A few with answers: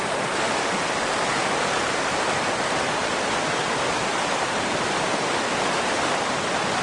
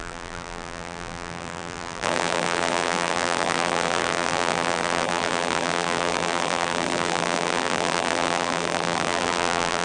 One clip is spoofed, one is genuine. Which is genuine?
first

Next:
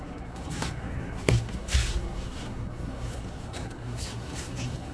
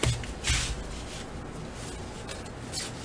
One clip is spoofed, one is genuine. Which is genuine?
second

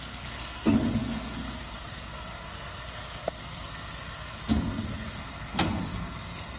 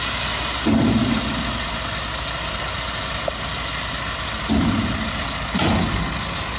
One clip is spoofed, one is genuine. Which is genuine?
second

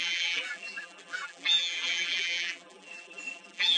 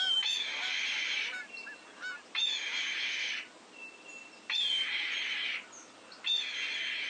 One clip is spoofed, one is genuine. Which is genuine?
second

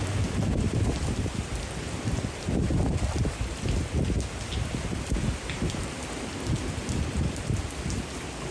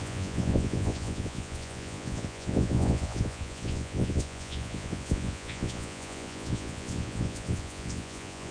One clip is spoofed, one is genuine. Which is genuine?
first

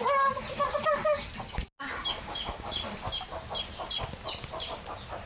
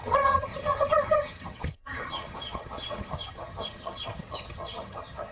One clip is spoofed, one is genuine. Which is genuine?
first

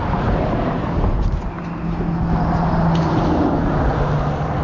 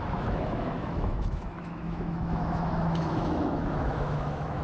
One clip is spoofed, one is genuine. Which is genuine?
first